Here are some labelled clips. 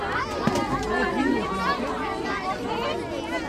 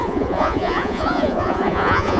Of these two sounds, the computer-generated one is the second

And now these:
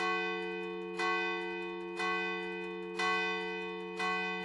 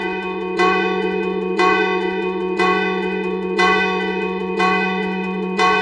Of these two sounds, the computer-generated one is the second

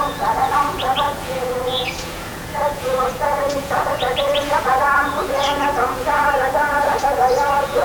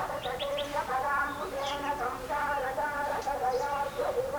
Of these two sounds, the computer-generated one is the first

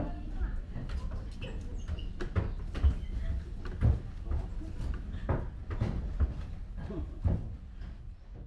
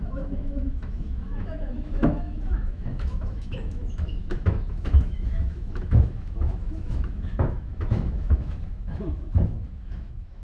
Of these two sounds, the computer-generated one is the second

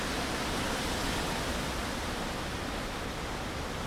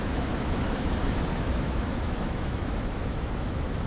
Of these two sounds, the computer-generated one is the second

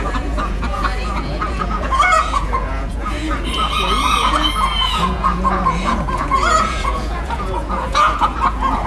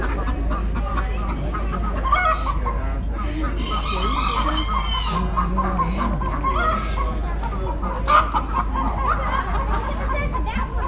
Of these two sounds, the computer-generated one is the first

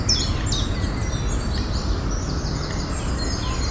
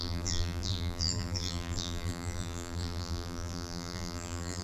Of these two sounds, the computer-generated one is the second